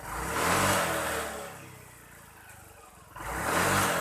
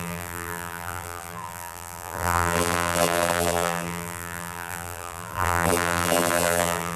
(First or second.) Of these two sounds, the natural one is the first